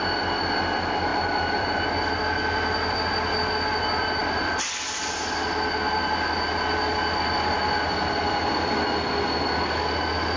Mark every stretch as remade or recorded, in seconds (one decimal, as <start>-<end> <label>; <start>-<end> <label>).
0.0-1.1 recorded; 1.1-1.8 remade; 1.8-4.2 recorded; 4.2-5.0 remade; 5.0-10.4 recorded